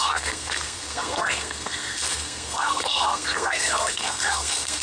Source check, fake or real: fake